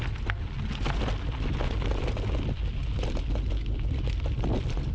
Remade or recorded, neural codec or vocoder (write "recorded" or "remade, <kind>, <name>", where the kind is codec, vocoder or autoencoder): recorded